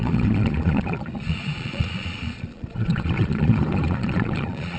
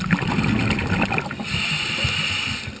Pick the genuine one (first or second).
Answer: second